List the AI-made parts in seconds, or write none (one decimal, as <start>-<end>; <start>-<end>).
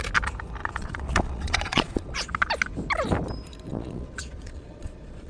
0.6-2.3; 3.7-5.3